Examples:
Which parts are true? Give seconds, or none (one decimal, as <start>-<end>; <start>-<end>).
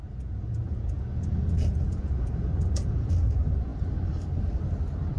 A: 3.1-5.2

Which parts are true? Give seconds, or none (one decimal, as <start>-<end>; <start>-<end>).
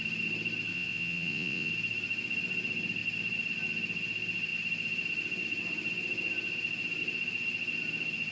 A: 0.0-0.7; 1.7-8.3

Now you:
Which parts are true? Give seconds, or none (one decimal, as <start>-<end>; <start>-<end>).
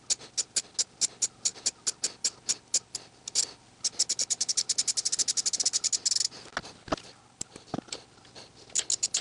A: 0.0-9.2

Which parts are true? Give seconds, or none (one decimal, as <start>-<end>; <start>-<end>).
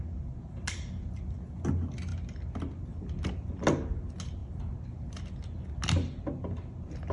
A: 0.0-7.1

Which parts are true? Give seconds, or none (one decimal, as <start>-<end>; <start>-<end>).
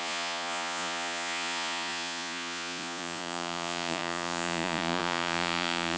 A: none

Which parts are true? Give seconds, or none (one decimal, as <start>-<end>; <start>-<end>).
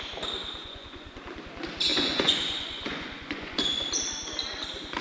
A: 0.0-0.6; 1.2-1.9; 3.8-5.0